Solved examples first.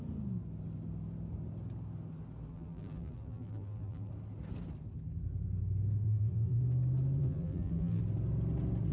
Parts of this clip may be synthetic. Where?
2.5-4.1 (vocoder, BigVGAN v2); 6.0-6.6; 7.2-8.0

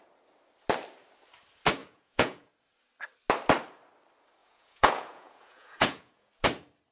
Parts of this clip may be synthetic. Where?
1.8-2.5 (vocoder, Vocos); 4.4-6.3

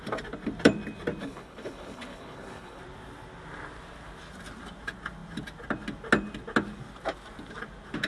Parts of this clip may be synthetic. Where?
1.2-2.8 (codec, HILCodec)

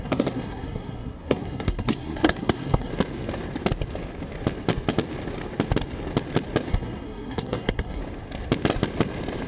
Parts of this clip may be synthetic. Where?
0.0-2.9 (codec, SNAC); 6.7-8.0